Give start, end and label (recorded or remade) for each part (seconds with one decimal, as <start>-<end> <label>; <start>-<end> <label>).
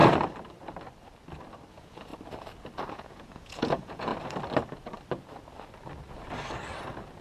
0.0-1.7 recorded; 1.7-2.1 remade; 2.1-2.9 recorded; 2.9-4.1 remade; 4.1-7.2 recorded